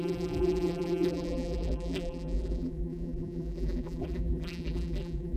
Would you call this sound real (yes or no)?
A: no